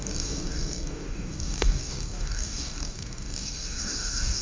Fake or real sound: fake